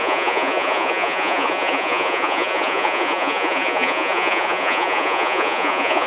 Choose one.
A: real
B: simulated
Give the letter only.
B